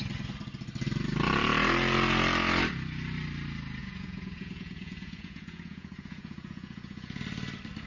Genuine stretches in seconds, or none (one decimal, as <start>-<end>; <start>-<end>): 0.0-3.8; 7.2-7.9

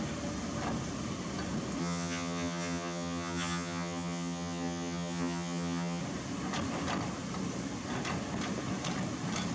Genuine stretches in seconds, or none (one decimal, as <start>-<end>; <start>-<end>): 0.0-1.8; 6.0-9.5

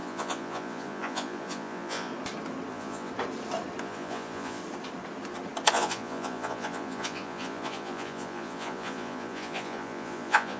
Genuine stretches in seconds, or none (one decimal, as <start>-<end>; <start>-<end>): 2.1-2.7; 3.1-3.8; 4.6-5.7

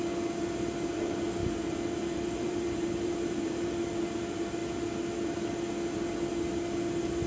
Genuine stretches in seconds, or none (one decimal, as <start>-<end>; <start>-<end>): 0.0-1.4; 3.7-7.3

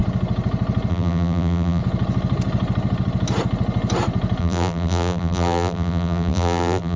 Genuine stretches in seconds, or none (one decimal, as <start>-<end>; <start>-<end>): 0.0-0.9; 1.8-4.4

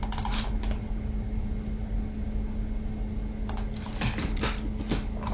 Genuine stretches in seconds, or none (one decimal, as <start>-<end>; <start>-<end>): 0.0-5.3